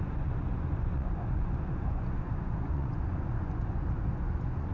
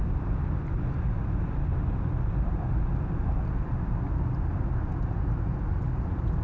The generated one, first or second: first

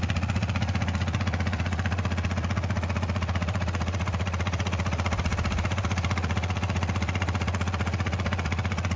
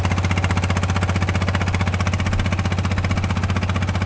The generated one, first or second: first